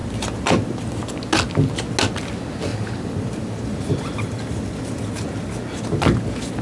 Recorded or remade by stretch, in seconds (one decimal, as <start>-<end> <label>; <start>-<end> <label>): 0.0-1.0 remade; 1.0-2.7 recorded; 2.7-5.0 remade; 5.0-6.6 recorded